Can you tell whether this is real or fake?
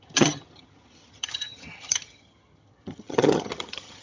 fake